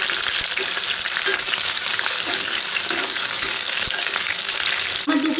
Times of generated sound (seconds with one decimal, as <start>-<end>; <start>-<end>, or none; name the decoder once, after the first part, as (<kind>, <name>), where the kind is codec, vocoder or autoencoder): 1.3-4.5 (codec, DAC)